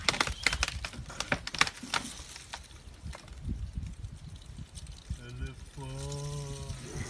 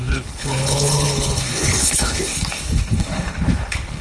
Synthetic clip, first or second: second